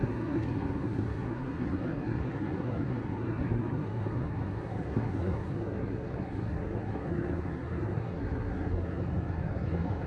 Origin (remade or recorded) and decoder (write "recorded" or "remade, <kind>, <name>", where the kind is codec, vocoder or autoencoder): remade, codec, SNAC